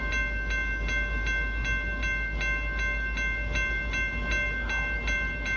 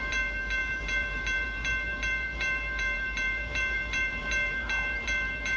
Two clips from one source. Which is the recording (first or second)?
first